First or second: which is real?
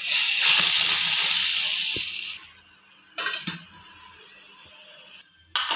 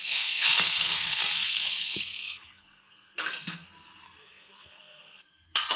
first